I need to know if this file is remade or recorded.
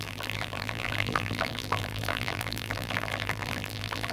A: remade